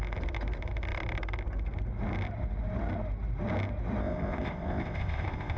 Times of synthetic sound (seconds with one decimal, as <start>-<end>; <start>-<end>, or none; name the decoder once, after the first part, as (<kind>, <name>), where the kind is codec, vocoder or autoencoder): 4.0-5.6 (codec, ZipCodec)